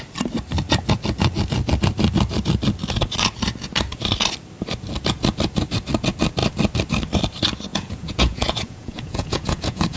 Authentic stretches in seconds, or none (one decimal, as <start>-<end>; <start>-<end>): 0.0-7.7